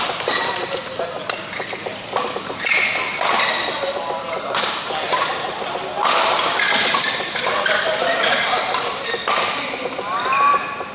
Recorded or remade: recorded